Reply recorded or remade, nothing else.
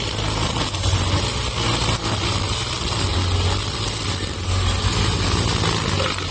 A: recorded